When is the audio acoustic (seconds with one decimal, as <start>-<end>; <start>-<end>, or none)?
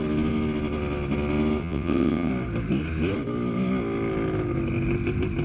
0.0-1.6; 2.3-5.4